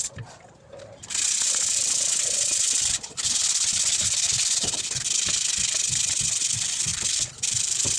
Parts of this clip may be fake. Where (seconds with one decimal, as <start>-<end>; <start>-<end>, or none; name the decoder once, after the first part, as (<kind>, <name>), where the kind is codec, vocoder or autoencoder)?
6.9-8.0 (vocoder, BigVGAN v2)